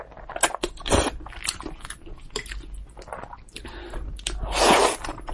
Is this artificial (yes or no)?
no